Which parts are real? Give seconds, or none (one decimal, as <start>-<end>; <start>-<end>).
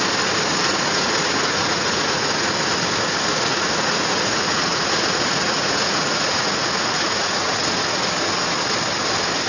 0.0-0.7; 2.5-3.3; 7.6-9.5